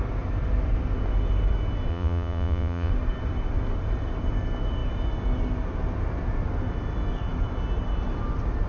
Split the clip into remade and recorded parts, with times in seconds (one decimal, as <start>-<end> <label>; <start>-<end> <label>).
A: 0.0-1.9 recorded; 1.9-2.9 remade; 2.9-8.7 recorded